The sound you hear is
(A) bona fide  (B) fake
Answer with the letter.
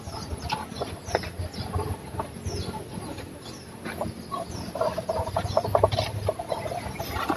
A